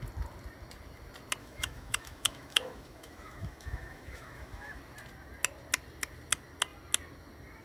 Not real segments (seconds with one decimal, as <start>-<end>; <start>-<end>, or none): 1.4-4.8